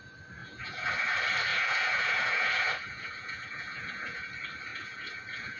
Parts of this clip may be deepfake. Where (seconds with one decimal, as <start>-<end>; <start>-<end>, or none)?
0.4-0.9; 1.5-4.3; 4.7-5.6